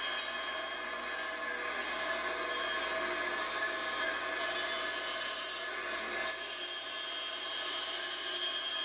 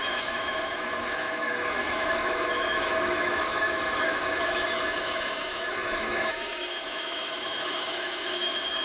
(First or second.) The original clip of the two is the first